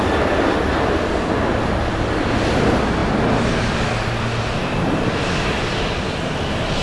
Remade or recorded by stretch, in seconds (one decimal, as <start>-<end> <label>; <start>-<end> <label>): 0.0-6.8 recorded